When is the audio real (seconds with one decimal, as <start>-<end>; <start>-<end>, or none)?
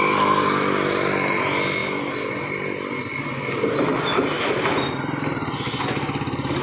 0.0-6.6